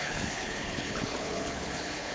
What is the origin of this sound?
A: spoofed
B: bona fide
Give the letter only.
A